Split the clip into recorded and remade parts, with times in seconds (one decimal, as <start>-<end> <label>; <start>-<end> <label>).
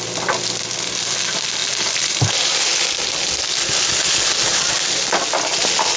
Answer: 0.0-6.0 recorded